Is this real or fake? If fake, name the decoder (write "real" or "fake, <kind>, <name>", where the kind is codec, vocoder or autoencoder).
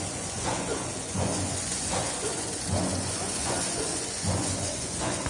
fake, vocoder, Vocos